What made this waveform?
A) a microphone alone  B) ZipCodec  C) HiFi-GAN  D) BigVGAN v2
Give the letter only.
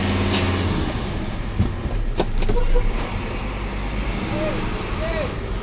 A